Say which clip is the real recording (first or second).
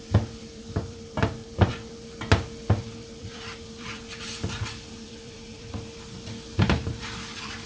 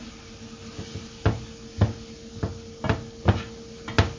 second